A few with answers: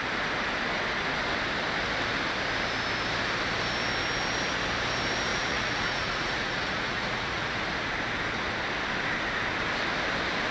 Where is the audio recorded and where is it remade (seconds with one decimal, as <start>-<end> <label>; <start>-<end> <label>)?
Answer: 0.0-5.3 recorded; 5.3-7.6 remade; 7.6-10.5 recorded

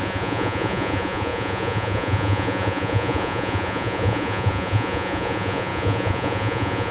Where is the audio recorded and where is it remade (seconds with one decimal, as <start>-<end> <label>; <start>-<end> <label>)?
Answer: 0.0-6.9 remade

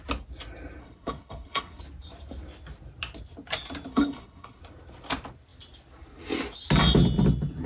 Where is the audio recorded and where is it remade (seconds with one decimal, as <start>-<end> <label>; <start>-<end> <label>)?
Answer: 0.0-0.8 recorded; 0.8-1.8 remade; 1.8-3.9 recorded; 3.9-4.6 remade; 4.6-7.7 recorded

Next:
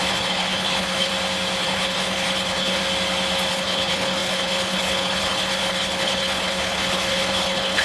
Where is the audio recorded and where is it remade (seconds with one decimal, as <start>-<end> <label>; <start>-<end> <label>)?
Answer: 0.0-1.1 remade; 1.1-1.6 recorded; 1.6-2.8 remade; 2.8-3.5 recorded; 3.5-7.8 remade

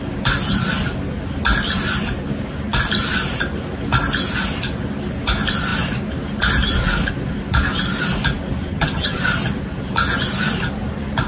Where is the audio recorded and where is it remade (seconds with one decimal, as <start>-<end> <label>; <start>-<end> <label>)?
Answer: 0.0-8.7 recorded; 8.7-9.2 remade; 9.2-11.3 recorded

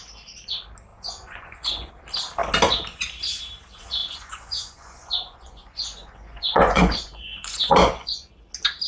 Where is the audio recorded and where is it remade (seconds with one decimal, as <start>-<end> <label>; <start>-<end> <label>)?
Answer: 0.0-0.9 recorded; 0.9-1.9 remade; 1.9-4.0 recorded; 4.0-8.3 remade; 8.3-8.9 recorded

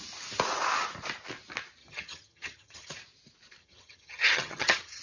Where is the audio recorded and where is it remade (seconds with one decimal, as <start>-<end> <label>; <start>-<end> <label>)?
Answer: 0.0-1.8 recorded; 1.8-2.9 remade; 2.9-3.6 recorded; 3.6-5.0 remade

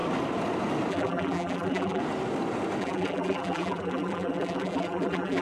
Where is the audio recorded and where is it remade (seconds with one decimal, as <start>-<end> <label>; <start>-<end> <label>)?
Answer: 0.0-0.9 recorded; 0.9-2.0 remade; 2.0-2.8 recorded; 2.8-5.4 remade